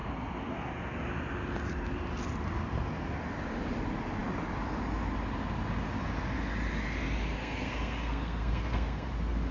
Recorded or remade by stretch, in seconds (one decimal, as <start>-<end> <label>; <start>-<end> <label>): 0.0-7.3 recorded; 7.3-9.1 remade; 9.1-9.5 recorded